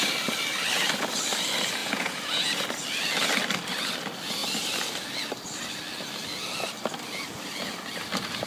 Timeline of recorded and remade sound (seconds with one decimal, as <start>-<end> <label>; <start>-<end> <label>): 0.0-1.8 recorded; 1.8-2.5 remade; 2.5-8.5 recorded